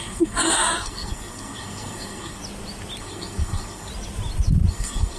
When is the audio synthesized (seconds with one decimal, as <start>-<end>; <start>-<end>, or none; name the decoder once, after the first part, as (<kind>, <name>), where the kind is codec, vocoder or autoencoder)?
0.0-2.4 (codec, SNAC); 3.0-3.9; 4.7-5.2